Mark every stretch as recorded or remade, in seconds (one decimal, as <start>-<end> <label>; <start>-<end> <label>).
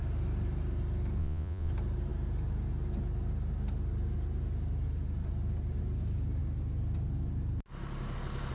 0.0-1.2 recorded; 1.2-1.7 remade; 1.7-8.5 recorded